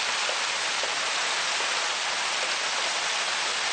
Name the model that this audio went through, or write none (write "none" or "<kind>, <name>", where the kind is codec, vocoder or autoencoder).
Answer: none